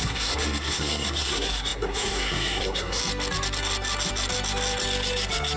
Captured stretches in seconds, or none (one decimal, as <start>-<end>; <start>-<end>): 3.0-5.6